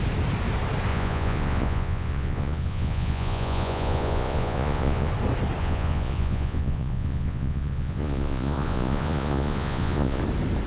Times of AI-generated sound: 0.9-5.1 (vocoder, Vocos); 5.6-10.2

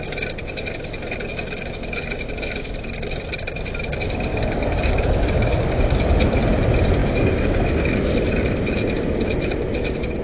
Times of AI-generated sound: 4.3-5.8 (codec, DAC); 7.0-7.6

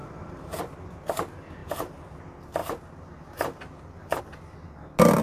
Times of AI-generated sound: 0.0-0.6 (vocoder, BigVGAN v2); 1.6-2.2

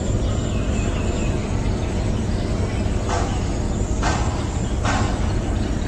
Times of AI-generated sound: 1.4-2.3 (vocoder, BigVGAN v2)

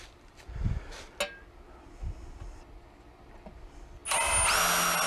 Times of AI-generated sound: none

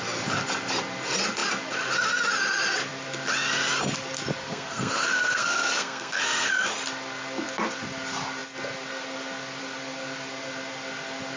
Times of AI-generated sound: 4.4-6.5 (codec, SNAC)

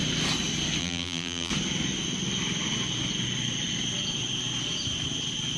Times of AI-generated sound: 0.8-1.5 (vocoder, BigVGAN v2)

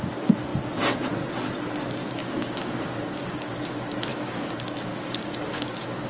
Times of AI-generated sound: 2.2-3.5 (codec, DAC); 4.1-6.1